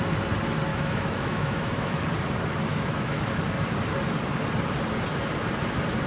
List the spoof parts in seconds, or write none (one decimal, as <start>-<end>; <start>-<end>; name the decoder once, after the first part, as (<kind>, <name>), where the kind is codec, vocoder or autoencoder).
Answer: 0.7-2.0 (autoencoder, DAC-VAE); 2.7-3.4